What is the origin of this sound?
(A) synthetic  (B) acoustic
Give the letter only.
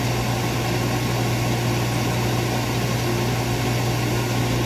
B